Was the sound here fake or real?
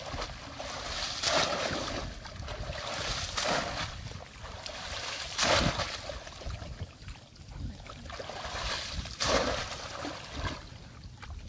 real